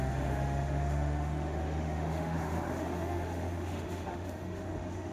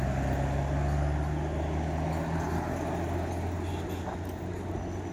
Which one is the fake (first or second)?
first